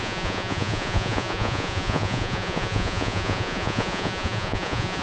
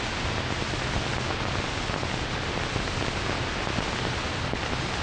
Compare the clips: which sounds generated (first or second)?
first